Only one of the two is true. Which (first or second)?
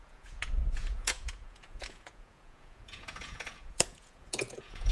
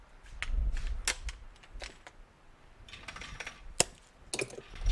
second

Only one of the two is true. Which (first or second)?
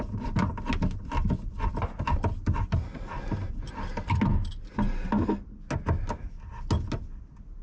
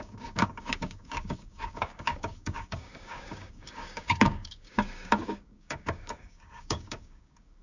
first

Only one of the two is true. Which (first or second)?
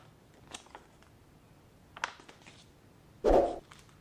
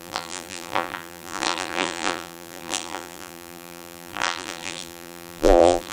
first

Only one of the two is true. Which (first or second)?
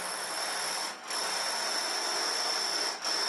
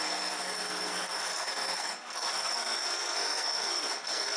first